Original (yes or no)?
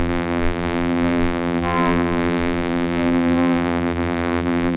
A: no